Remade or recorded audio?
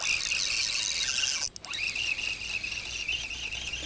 recorded